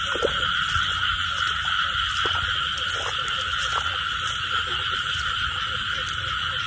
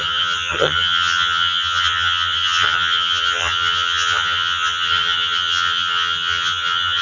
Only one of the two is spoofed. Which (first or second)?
second